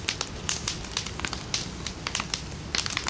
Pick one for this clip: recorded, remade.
recorded